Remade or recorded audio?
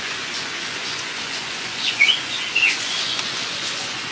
remade